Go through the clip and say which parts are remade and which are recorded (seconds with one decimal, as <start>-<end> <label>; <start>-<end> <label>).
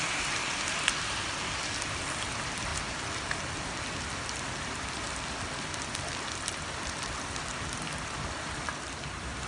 0.0-2.7 remade; 2.7-3.9 recorded; 3.9-9.5 remade